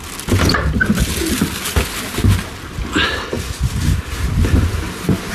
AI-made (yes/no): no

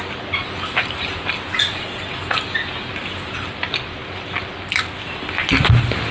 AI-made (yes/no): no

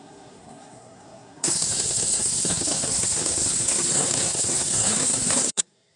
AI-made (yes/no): yes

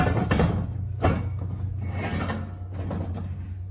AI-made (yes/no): no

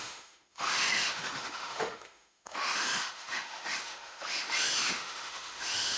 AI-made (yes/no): yes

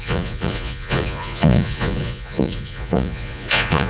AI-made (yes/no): yes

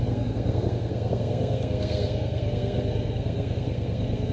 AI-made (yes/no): yes